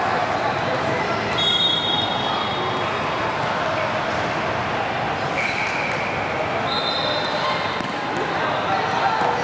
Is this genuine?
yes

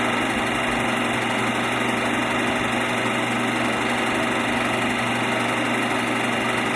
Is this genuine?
yes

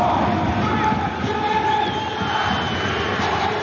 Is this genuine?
yes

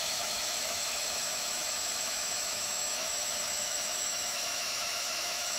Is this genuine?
no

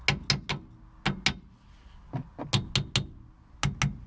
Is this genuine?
yes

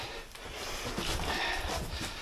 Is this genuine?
yes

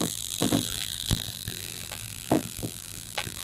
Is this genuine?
no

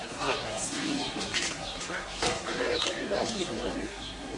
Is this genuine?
no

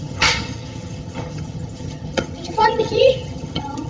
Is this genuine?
no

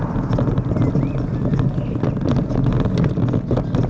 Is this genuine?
yes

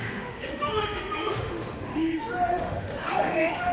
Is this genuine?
no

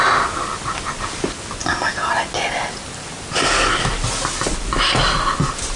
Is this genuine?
yes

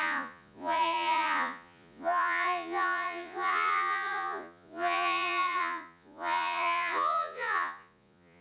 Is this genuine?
no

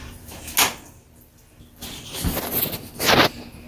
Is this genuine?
yes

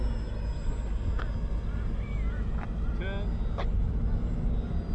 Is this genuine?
yes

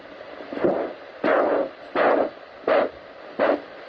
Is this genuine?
yes